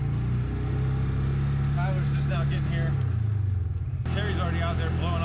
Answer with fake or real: real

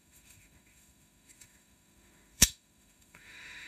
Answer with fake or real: fake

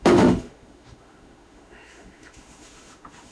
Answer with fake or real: fake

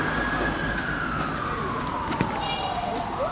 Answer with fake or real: real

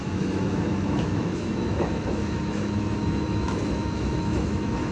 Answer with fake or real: fake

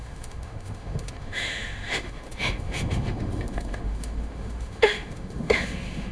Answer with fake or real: fake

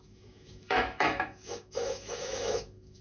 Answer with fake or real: fake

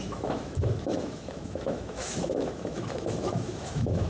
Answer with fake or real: fake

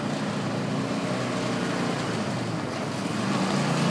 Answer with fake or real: real